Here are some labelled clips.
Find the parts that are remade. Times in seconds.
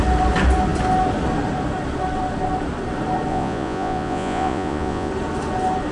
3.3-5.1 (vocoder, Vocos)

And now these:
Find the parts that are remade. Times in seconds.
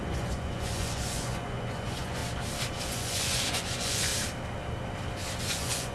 0.0-2.2 (vocoder, Vocos); 2.9-4.1; 5.4-5.9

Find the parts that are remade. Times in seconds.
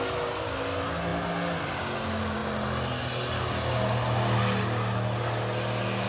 none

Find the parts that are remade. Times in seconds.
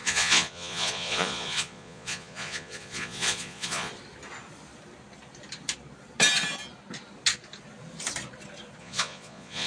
0.0-3.9 (vocoder, Vocos); 8.8-9.7